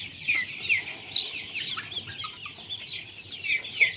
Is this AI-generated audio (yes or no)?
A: no